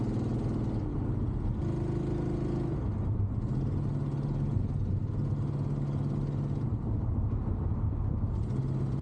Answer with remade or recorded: recorded